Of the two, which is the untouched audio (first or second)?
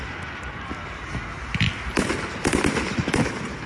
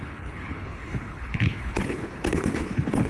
first